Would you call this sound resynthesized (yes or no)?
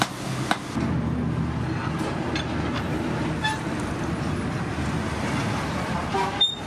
no